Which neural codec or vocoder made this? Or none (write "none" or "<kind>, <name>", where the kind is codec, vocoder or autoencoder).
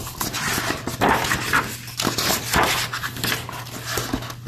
none